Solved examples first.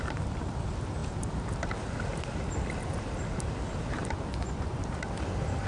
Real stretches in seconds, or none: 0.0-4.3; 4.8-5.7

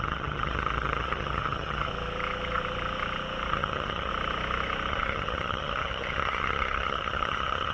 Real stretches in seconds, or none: 1.9-3.5; 4.1-4.9

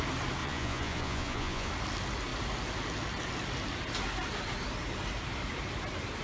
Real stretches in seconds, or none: 0.0-0.4; 1.7-6.2

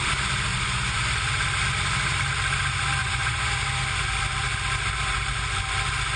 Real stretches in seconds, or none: 0.0-0.5; 1.2-3.0; 3.5-6.2

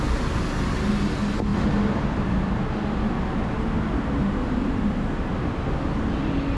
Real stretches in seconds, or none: 0.0-6.6

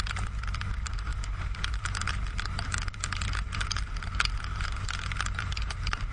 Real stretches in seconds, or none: none

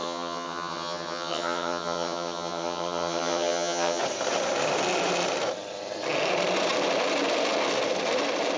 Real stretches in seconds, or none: 4.0-8.6

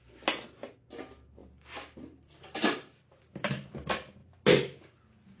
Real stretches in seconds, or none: 0.0-1.4; 3.5-5.4